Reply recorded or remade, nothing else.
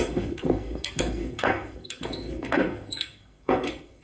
remade